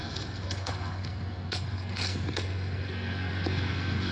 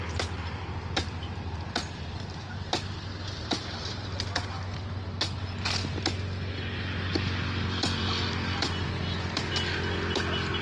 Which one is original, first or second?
second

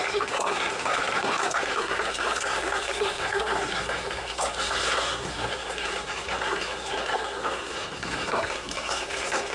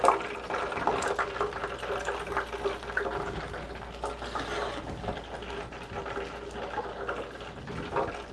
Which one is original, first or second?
second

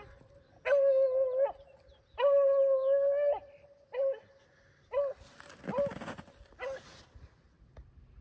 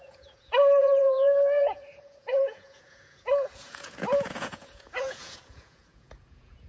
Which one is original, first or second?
first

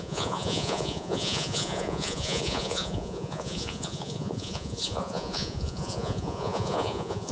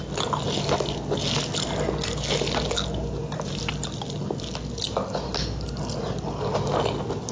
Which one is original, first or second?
second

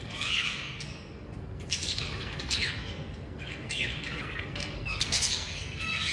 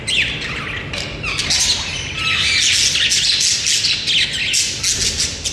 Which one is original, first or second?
second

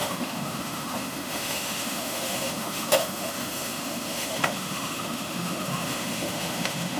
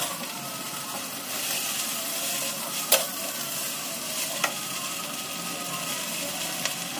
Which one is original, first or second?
second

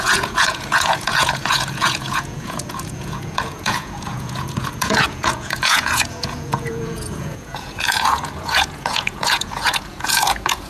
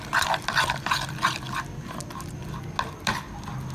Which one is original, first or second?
second